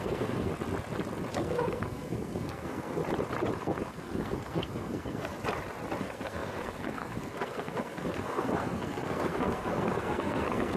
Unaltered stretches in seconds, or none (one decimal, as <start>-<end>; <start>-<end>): 0.5-1.3; 3.0-3.6; 5.3-6.0